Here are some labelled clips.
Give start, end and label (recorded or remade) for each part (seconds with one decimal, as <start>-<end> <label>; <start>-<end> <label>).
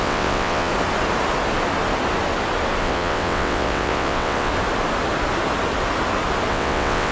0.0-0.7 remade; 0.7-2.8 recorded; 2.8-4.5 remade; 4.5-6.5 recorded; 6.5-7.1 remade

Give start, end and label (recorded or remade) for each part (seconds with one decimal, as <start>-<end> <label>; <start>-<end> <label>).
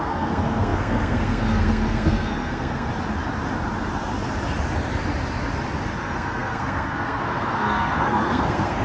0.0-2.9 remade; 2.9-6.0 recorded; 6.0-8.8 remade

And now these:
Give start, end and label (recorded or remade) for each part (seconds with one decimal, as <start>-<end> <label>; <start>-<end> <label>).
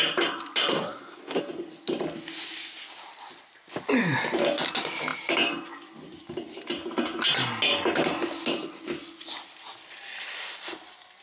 0.0-0.7 recorded; 0.7-1.4 remade; 1.4-11.2 recorded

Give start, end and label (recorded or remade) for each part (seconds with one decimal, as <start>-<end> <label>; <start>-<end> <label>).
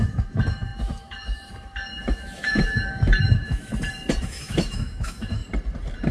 0.0-3.7 remade; 3.7-4.2 recorded; 4.2-5.4 remade; 5.4-6.1 recorded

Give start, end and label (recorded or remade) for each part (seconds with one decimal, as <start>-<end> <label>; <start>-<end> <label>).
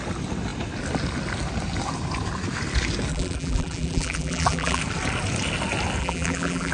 0.0-3.1 recorded; 3.1-4.8 remade; 4.8-6.0 recorded; 6.0-6.7 remade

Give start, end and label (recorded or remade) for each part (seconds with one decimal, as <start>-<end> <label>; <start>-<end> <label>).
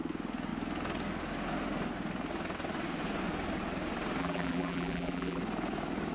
0.0-4.2 recorded; 4.2-5.4 remade; 5.4-6.1 recorded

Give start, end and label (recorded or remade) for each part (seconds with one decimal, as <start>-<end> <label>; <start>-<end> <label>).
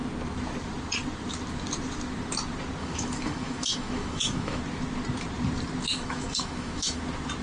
0.0-2.8 recorded; 2.8-4.6 remade; 4.6-5.9 recorded; 5.9-7.0 remade; 7.0-7.4 recorded